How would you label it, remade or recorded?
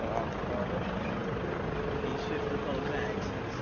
recorded